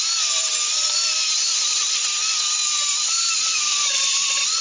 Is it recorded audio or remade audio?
remade